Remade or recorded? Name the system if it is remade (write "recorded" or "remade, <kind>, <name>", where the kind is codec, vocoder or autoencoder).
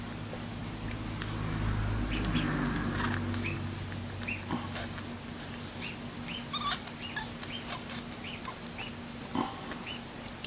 recorded